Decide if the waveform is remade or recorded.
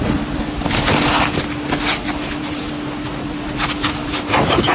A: recorded